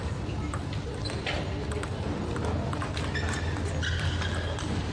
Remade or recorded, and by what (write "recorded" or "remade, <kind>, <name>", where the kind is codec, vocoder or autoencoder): recorded